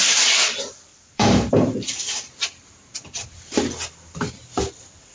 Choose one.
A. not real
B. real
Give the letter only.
A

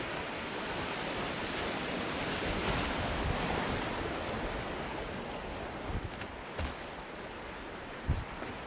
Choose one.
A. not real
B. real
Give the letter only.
B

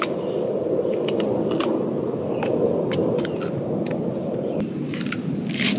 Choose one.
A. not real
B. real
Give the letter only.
A